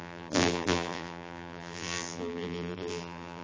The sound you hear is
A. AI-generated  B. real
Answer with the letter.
A